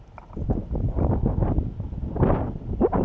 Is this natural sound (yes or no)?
yes